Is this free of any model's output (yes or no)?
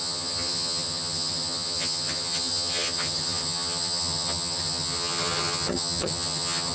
no